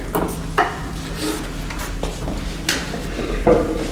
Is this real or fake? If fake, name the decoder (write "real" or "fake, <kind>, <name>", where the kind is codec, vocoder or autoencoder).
real